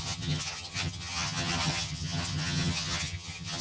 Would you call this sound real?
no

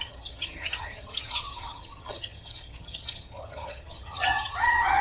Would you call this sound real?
no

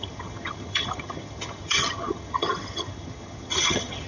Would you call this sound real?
no